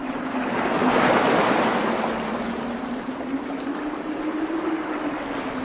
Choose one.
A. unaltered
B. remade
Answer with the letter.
A